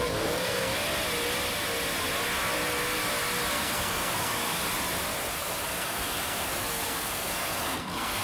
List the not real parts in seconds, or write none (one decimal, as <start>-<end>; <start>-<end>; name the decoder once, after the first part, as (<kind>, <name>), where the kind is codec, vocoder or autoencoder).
0.0-0.7 (codec, SNAC); 3.5-4.6; 5.3-8.2